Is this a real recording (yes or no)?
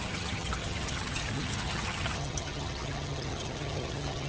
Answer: no